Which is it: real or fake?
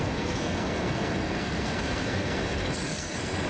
fake